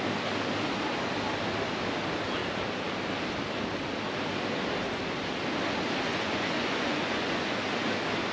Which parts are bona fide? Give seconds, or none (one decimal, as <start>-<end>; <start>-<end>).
0.0-6.1; 7.6-8.3